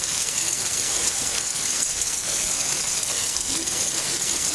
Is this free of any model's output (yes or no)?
no